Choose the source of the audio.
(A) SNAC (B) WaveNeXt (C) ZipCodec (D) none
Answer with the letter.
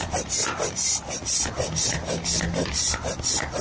D